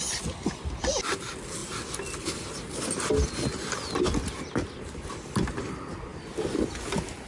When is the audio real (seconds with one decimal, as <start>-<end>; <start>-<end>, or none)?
0.0-7.3